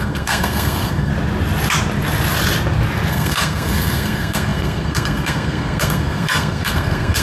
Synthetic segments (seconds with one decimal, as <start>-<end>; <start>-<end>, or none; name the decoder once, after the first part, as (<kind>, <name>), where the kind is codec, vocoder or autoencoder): 0.0-1.1 (codec, SNAC); 3.1-7.2